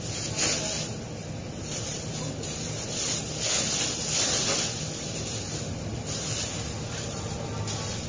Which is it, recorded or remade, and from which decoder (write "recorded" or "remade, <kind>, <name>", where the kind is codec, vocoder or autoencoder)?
recorded